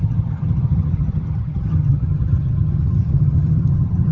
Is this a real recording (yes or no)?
no